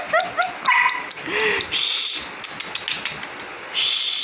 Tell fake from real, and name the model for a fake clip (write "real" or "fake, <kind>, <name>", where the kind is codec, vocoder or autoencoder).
real